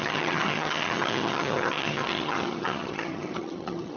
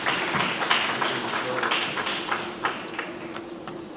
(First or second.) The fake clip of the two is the first